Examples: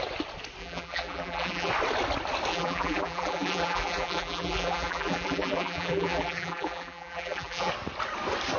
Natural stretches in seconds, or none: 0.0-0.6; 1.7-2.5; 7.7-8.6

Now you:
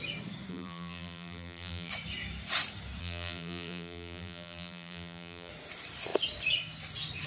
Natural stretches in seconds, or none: 0.0-0.5; 1.9-3.0; 5.5-7.3

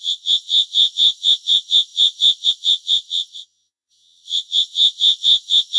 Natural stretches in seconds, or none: none